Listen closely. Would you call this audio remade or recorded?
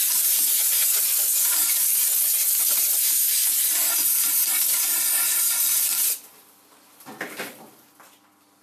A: remade